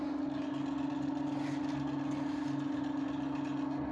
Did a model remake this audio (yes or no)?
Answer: no